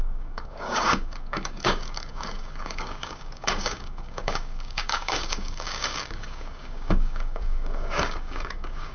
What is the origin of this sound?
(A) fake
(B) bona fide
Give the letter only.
A